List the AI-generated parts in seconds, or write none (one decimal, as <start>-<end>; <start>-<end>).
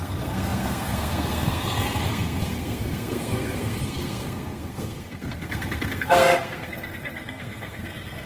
0.0-8.3